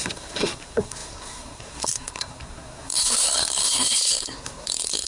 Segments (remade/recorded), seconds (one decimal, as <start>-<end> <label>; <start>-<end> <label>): 0.0-5.1 remade